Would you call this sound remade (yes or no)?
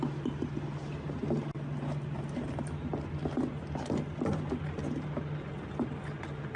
no